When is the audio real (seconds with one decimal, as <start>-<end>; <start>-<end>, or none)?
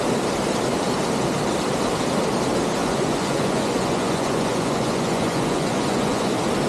0.0-2.8; 6.3-6.7